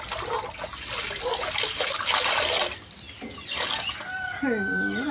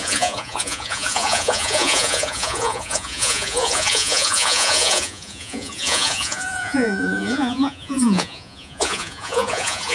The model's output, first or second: second